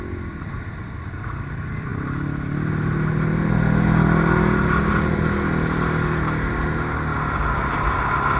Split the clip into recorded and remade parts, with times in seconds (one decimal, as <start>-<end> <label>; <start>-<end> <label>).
0.0-8.4 recorded